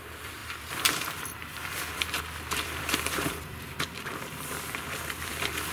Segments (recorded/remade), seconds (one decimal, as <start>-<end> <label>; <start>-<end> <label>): 0.0-5.7 remade